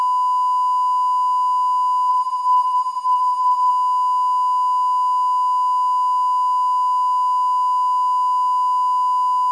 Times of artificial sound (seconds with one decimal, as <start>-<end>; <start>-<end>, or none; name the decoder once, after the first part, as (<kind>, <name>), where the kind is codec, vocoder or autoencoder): 2.1-3.7 (vocoder, BigVGAN v2)